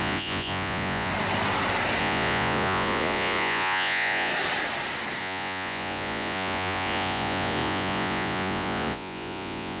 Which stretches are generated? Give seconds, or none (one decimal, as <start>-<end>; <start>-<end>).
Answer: 0.0-1.1; 2.0-4.3; 5.2-9.8